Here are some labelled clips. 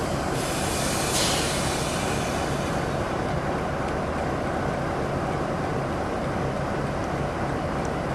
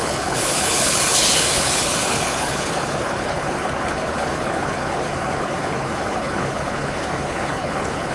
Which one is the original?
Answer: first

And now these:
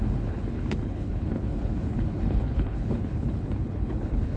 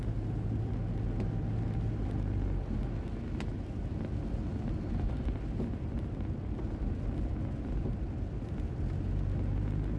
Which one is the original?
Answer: second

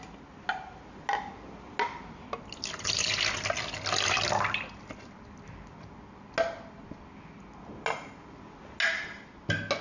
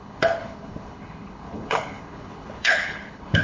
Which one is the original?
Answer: first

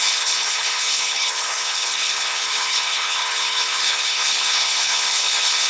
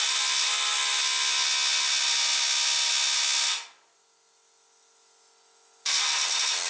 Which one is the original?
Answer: second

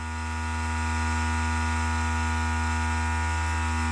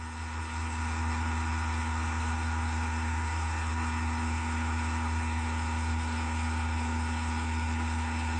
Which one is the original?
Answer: first